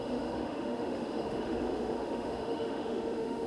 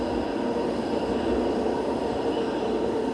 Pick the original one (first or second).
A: second